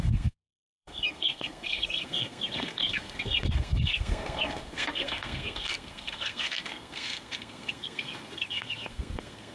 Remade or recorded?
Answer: remade